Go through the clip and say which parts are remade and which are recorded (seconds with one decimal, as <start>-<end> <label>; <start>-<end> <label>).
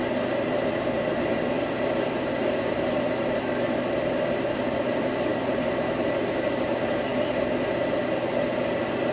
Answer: 0.0-9.1 recorded